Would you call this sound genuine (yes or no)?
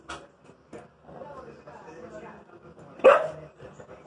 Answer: yes